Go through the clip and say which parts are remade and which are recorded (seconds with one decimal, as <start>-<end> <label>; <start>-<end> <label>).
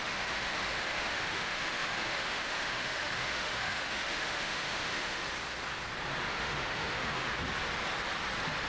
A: 0.0-5.2 remade; 5.2-6.3 recorded; 6.3-7.3 remade; 7.3-8.7 recorded